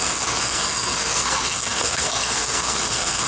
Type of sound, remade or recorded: remade